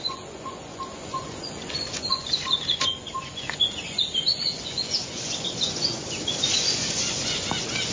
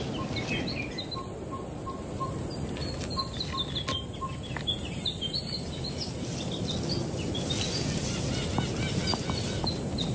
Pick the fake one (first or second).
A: first